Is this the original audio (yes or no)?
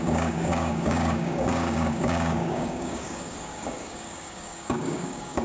no